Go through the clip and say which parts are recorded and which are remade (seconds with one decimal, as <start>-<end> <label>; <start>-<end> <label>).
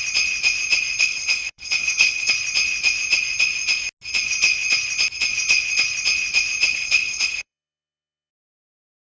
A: 0.0-1.0 recorded; 1.0-2.3 remade; 2.3-6.7 recorded; 6.7-8.3 remade; 8.3-9.2 recorded